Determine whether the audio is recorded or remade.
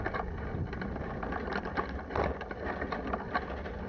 recorded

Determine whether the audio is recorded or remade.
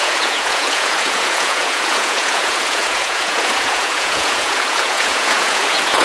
remade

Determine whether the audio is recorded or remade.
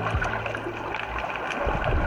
recorded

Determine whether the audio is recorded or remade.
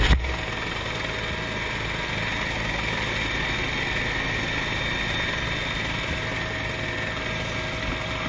recorded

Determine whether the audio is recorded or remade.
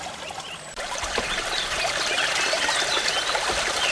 recorded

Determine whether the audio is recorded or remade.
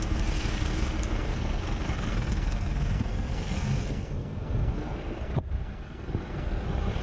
remade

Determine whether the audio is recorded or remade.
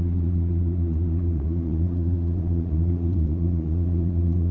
remade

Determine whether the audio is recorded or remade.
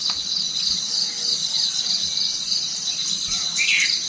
recorded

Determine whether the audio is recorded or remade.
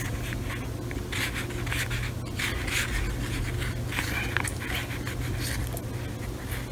recorded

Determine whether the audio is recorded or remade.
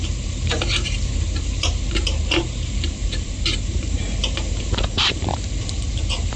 remade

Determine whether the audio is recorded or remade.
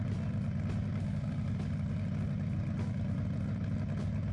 recorded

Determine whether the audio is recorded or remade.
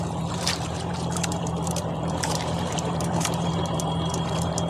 remade